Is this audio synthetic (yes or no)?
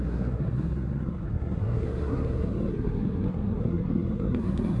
yes